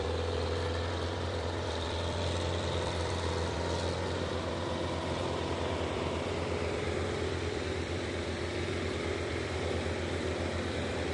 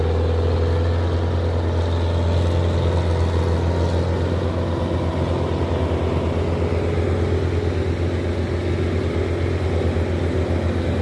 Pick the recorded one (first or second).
second